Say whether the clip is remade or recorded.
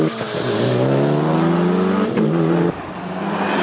recorded